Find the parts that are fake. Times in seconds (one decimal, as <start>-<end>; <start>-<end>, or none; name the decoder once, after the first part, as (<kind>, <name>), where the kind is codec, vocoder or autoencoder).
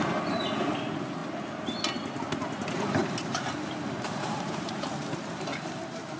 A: 3.0-5.7 (vocoder, BigVGAN v2)